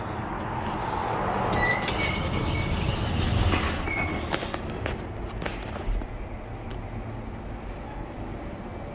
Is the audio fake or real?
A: real